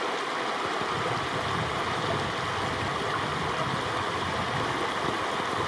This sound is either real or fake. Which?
real